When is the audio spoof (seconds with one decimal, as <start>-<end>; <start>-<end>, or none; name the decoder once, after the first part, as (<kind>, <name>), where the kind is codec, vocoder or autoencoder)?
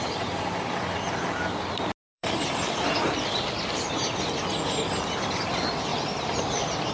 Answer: 2.1-3.9 (vocoder, BigVGAN v2); 5.9-6.5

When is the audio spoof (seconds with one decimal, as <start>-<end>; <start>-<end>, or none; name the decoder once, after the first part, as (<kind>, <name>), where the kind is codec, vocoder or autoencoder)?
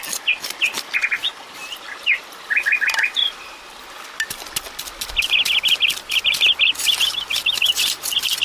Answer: 1.2-2.2 (vocoder, BigVGAN v2); 3.2-3.8; 7.3-8.0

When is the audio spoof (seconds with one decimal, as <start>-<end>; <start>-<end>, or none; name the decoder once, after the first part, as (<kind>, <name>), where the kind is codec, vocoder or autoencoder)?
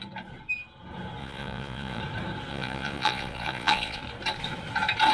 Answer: 1.2-2.0 (vocoder, Vocos); 2.5-4.0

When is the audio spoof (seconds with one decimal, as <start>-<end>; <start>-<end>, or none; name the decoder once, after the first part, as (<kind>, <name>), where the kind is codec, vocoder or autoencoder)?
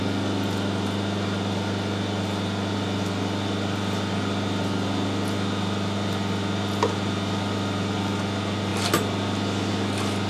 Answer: none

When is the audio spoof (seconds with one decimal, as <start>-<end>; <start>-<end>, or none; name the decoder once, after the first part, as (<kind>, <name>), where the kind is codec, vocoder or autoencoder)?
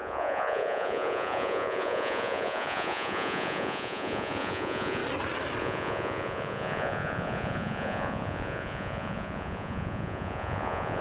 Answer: 0.0-5.0 (vocoder, Vocos); 5.6-11.0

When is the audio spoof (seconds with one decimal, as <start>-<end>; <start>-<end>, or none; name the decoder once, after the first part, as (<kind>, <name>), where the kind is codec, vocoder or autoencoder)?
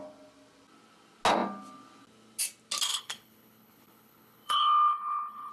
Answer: 2.9-5.5 (codec, HILCodec)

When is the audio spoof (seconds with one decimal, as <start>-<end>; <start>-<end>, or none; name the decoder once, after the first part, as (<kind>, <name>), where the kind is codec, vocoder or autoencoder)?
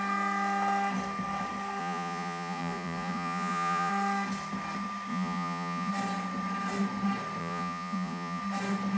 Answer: 1.8-3.9 (vocoder, Vocos); 5.1-5.9; 7.4-8.4